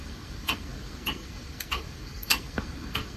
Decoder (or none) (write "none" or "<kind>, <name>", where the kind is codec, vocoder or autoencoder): codec, SNAC